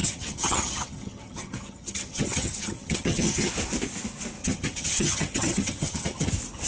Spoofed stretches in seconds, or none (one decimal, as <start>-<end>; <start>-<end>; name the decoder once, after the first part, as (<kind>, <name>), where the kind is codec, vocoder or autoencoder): 0.0-3.5 (vocoder, HiFi-GAN); 4.4-6.3